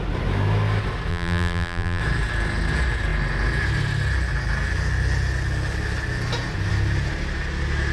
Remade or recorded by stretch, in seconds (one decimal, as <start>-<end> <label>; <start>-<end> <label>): 0.0-1.1 recorded; 1.1-2.0 remade; 2.0-7.9 recorded